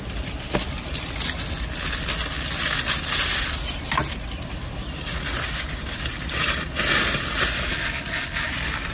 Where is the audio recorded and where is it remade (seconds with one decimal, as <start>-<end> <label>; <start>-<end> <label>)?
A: 0.0-7.7 recorded; 7.7-8.5 remade; 8.5-8.9 recorded